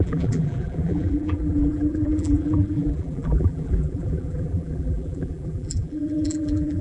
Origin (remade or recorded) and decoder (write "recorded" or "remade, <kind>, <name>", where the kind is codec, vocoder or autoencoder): remade, vocoder, BigVGAN v2